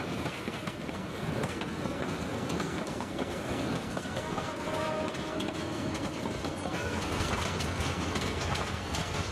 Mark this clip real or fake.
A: fake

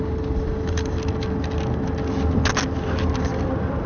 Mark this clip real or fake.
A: real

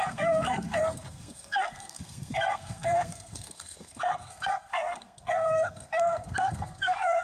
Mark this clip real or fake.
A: fake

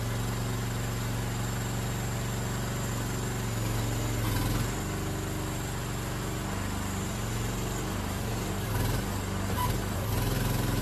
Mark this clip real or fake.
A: real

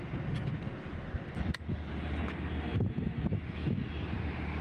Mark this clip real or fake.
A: real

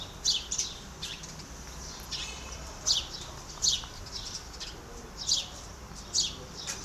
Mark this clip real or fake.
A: real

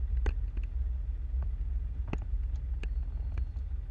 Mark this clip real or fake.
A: real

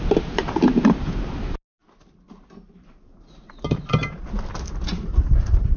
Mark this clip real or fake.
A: real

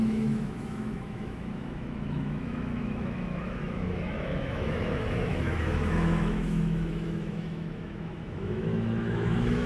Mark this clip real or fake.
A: fake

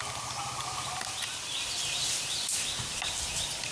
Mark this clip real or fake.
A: real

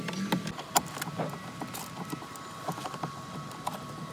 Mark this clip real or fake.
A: real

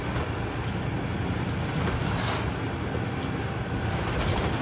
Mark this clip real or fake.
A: real